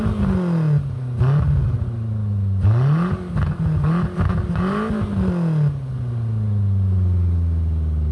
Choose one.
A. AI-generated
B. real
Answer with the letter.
B